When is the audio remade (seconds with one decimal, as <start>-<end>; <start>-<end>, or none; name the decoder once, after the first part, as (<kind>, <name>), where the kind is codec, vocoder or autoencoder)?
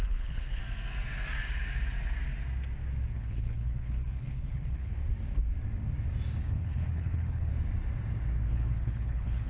0.0-0.6 (codec, HILCodec); 3.1-4.9; 6.4-7.5; 8.5-9.5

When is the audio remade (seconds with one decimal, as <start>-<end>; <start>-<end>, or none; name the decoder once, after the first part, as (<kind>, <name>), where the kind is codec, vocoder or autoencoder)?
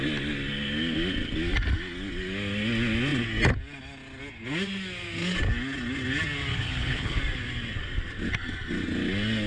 6.5-7.2 (codec, HILCodec)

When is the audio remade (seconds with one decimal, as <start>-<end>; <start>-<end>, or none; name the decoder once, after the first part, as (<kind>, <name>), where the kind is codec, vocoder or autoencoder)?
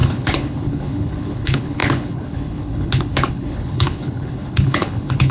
0.0-5.3 (codec, HILCodec)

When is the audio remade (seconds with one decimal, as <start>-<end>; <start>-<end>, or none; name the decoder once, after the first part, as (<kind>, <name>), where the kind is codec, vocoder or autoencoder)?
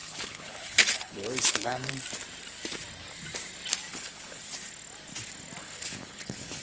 0.0-1.9 (codec, HILCodec); 3.9-4.4; 5.6-6.6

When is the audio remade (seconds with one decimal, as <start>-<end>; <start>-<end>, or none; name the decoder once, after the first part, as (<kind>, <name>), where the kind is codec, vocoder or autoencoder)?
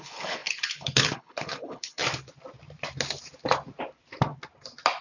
0.0-2.0 (codec, HILCodec)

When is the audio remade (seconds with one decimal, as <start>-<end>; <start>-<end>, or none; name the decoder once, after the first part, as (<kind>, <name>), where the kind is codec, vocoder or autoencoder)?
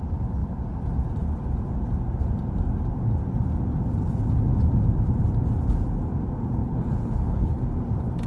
6.6-7.6 (codec, HILCodec)